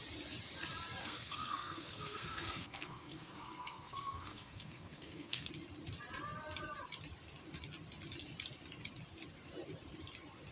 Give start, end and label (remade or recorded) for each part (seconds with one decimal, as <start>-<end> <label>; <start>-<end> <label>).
0.0-1.0 recorded; 1.0-5.5 remade; 5.5-10.5 recorded